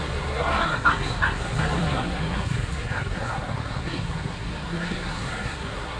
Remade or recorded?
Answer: remade